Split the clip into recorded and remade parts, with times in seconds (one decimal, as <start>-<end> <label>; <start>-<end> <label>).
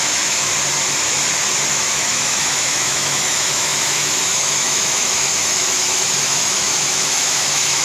0.0-0.5 remade; 0.5-1.7 recorded; 1.7-7.8 remade